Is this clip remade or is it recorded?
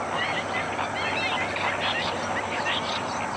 recorded